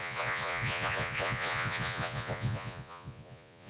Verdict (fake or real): fake